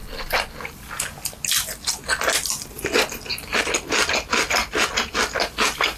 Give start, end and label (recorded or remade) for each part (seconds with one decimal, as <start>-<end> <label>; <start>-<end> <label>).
0.0-6.0 recorded